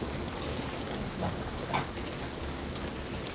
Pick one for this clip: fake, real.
fake